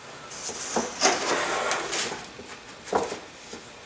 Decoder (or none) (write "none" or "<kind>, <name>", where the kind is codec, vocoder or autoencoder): none